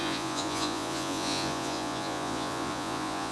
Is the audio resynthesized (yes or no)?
yes